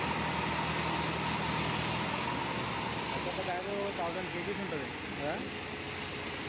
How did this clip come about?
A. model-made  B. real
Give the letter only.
B